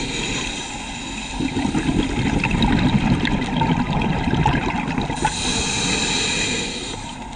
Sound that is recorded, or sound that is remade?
recorded